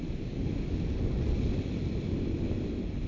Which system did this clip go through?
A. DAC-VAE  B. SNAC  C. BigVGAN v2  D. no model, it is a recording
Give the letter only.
D